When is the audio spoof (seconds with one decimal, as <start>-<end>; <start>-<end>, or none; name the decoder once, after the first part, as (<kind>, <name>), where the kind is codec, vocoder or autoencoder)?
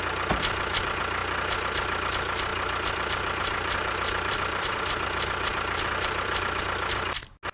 2.5-6.6 (vocoder, BigVGAN v2)